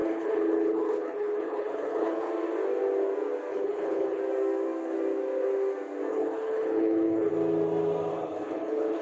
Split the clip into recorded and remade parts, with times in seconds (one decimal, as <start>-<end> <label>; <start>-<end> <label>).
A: 0.0-2.3 remade; 2.3-3.5 recorded; 3.5-4.2 remade; 4.2-6.1 recorded; 6.1-7.3 remade; 7.3-8.1 recorded; 8.1-9.0 remade